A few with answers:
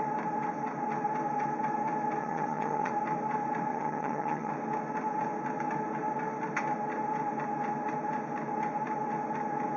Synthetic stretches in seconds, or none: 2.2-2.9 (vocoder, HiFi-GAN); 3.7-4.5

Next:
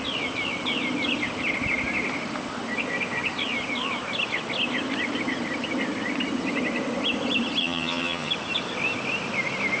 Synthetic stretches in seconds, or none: 7.6-8.3 (vocoder, HiFi-GAN)